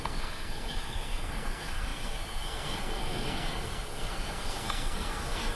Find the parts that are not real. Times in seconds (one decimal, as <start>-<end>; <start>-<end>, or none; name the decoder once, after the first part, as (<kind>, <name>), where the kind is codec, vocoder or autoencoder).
0.0-5.6 (codec, SNAC)